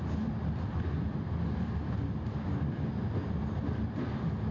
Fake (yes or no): no